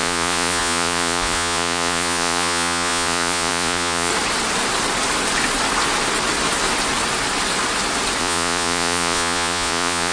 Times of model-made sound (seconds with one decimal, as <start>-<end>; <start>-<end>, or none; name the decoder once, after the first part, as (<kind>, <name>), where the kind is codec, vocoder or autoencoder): 0.0-4.1 (vocoder, Vocos); 8.2-10.1